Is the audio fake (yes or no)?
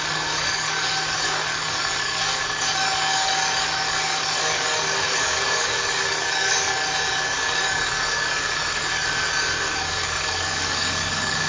yes